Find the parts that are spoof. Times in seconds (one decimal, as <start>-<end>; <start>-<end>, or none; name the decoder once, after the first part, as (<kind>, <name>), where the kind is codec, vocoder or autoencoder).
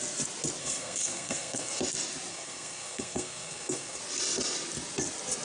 0.6-1.8 (codec, SNAC); 2.3-4.0